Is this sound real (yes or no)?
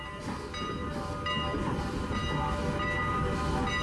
yes